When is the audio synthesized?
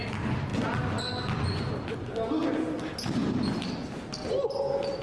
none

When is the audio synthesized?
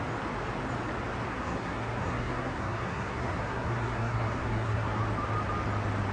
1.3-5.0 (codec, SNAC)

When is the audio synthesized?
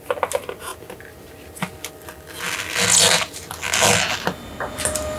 none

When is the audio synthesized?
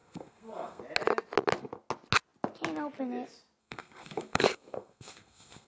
0.0-0.8 (codec, SNAC); 3.6-5.7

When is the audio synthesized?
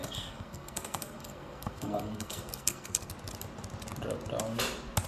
0.0-3.1 (codec, SNAC)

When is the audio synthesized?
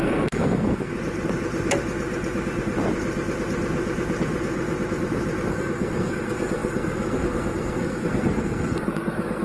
0.0-0.9 (codec, SNAC); 5.5-9.4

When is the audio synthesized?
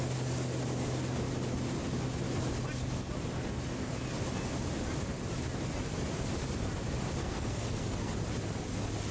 7.2-8.1 (codec, SNAC)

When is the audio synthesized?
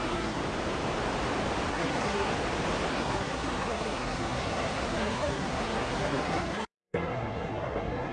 0.0-0.4 (codec, SNAC); 1.7-2.3; 2.9-8.1